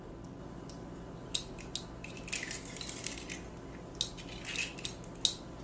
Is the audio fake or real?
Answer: real